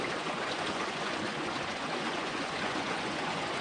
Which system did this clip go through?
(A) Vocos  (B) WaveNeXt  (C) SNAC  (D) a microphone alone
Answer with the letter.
A